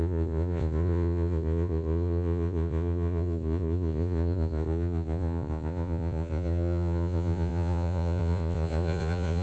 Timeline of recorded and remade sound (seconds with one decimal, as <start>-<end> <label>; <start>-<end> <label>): 0.0-9.4 remade